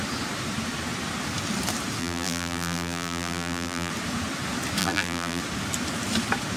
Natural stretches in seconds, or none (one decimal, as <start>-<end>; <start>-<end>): 0.0-2.0; 3.9-4.8; 5.4-6.6